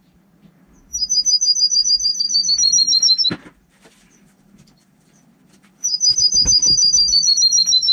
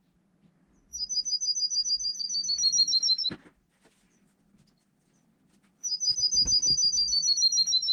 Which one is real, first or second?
second